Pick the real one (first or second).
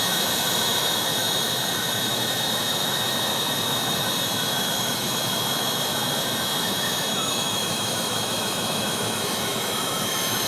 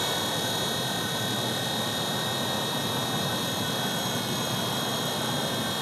second